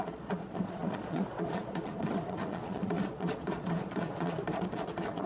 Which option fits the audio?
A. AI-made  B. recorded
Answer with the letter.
A